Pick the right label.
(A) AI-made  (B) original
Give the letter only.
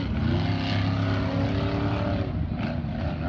B